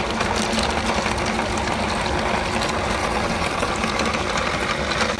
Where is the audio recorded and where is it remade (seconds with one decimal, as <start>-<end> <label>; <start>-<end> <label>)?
0.0-3.0 recorded; 3.0-3.7 remade; 3.7-5.2 recorded